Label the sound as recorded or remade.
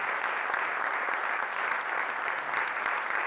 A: recorded